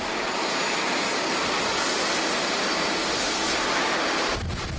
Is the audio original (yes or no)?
yes